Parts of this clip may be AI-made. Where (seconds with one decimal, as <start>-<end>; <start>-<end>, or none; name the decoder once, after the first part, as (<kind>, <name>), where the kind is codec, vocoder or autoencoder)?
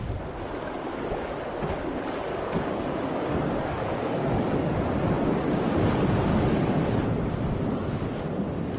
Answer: 2.3-4.7 (codec, DAC); 6.3-7.0